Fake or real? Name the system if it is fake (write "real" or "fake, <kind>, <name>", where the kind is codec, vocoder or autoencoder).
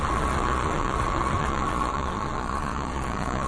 fake, vocoder, Vocos